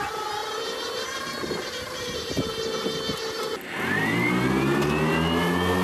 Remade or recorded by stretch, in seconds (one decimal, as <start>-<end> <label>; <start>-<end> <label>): 0.0-5.8 recorded